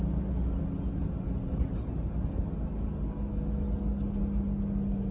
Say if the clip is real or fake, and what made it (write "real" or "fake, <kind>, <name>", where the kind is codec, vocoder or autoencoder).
real